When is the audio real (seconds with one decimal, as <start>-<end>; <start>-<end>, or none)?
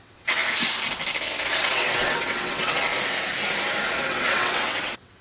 0.4-1.5; 2.9-4.0